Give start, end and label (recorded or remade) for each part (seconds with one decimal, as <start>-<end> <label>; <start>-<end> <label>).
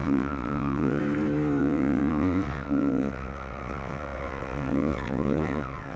0.0-1.0 remade; 1.0-1.6 recorded; 1.6-6.0 remade